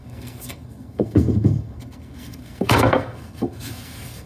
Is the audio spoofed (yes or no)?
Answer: yes